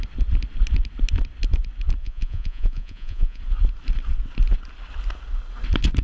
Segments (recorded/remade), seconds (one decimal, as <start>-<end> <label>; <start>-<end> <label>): 0.0-2.0 recorded; 2.0-3.4 remade; 3.4-6.0 recorded